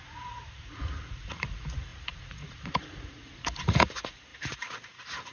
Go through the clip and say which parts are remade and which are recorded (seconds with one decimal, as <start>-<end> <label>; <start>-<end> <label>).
0.0-5.3 remade

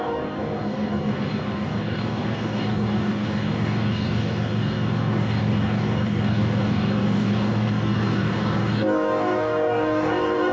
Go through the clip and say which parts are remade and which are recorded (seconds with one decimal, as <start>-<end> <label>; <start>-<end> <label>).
0.0-10.5 remade

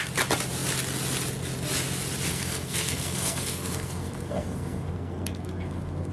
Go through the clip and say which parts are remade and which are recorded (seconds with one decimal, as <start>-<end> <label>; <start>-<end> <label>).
0.0-2.3 recorded; 2.3-6.1 remade

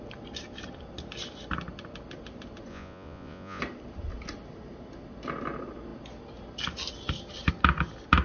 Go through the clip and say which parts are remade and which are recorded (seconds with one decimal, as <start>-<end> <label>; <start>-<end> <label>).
0.0-2.7 recorded; 2.7-3.6 remade; 3.6-8.2 recorded

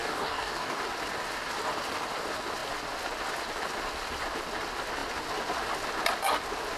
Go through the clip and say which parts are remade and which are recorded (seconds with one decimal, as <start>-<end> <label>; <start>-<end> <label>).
0.0-0.8 remade; 0.8-6.8 recorded

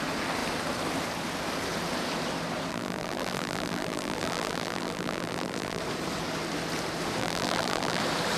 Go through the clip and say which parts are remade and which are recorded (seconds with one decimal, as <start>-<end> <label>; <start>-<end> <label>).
0.0-2.7 recorded; 2.7-5.8 remade; 5.8-7.2 recorded; 7.2-8.0 remade; 8.0-8.4 recorded

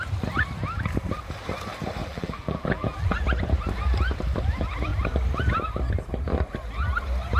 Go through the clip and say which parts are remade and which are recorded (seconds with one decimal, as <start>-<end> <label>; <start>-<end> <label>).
0.0-2.0 recorded; 2.0-3.2 remade; 3.2-7.4 recorded